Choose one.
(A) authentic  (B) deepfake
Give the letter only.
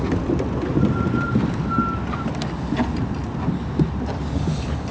A